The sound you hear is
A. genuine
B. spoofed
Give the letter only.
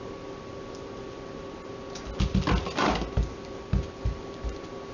A